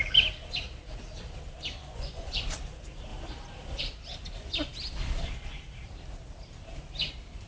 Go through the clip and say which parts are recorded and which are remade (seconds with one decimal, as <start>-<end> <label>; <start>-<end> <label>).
0.0-1.8 recorded; 1.8-2.4 remade; 2.4-7.5 recorded